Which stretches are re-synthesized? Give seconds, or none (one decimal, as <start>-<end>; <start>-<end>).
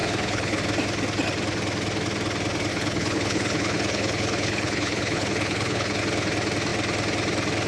0.0-0.6; 2.7-6.0